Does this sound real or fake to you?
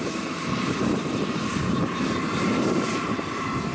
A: fake